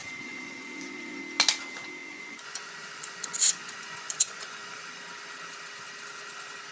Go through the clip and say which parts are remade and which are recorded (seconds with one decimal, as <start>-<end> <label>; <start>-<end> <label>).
0.0-1.2 remade; 1.2-2.0 recorded; 2.0-5.0 remade; 5.0-6.7 recorded

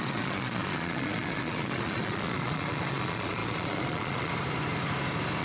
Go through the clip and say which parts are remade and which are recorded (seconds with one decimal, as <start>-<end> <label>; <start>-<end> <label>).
0.0-4.3 remade; 4.3-5.4 recorded

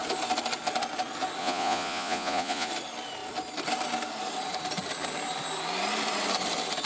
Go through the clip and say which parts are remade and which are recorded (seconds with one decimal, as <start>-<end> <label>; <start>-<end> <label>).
0.0-1.4 recorded; 1.4-2.7 remade; 2.7-6.9 recorded

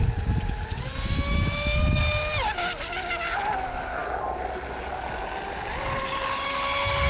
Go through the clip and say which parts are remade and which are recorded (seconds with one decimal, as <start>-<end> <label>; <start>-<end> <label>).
0.0-7.1 recorded